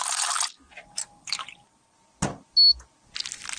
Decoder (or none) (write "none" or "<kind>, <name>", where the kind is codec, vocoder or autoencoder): none